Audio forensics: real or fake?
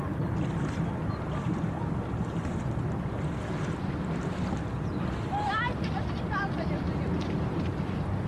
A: fake